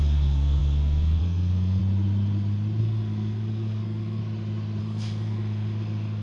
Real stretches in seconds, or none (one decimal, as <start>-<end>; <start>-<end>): 1.8-2.8; 4.2-4.8